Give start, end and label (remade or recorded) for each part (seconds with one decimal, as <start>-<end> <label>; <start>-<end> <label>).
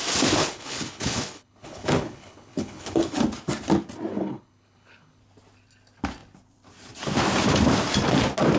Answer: 0.0-0.4 recorded; 0.4-3.2 remade; 3.2-4.1 recorded; 4.1-5.2 remade; 5.2-8.6 recorded